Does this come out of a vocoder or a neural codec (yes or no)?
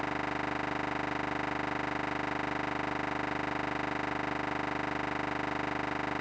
no